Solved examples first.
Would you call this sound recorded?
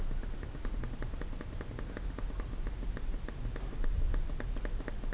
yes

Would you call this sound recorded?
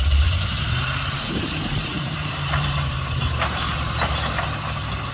no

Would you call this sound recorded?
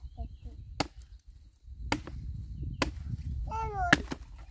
yes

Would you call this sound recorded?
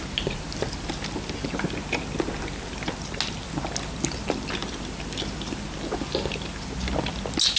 yes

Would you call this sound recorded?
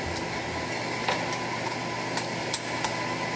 yes